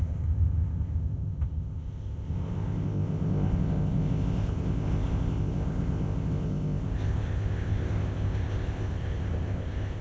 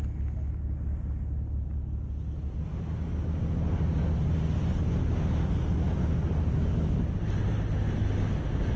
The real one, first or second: second